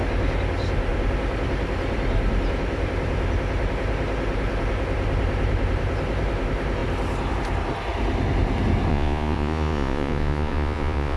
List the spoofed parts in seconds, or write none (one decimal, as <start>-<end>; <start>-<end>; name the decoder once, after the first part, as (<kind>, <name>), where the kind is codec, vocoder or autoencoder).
8.9-11.2 (vocoder, Vocos)